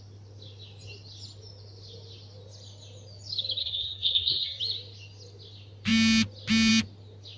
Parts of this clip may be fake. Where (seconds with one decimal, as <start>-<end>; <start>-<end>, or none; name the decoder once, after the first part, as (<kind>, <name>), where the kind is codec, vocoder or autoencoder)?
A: 3.6-4.6 (codec, SNAC)